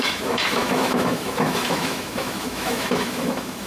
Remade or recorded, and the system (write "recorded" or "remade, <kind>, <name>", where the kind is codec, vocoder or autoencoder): remade, autoencoder, DAC-VAE